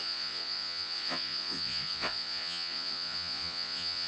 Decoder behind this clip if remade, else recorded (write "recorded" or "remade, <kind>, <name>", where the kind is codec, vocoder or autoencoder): remade, vocoder, Vocos